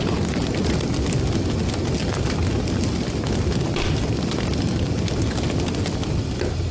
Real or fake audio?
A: real